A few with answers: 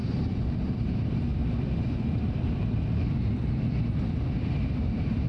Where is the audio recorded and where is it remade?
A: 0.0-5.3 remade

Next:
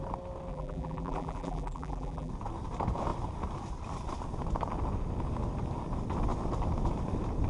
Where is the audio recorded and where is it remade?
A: 0.0-0.5 recorded; 0.5-2.3 remade; 2.3-7.5 recorded

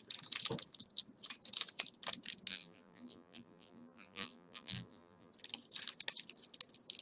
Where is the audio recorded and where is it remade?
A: 0.0-2.5 recorded; 2.5-5.3 remade; 5.3-7.0 recorded

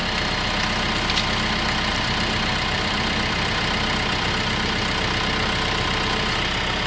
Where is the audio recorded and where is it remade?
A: 0.0-1.9 recorded; 1.9-4.3 remade; 4.3-6.9 recorded

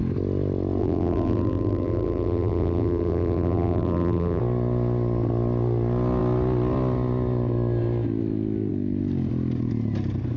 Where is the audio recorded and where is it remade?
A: 0.0-0.8 recorded; 0.8-4.4 remade; 4.4-10.4 recorded

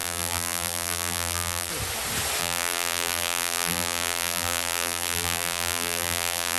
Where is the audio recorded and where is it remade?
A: 0.0-1.7 remade; 1.7-2.4 recorded; 2.4-6.6 remade

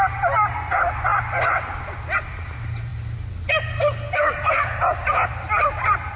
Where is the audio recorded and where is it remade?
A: 0.0-6.2 recorded

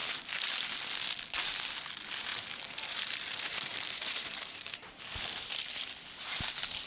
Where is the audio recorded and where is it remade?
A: 0.0-0.5 remade; 0.5-2.3 recorded; 2.3-5.0 remade; 5.0-6.9 recorded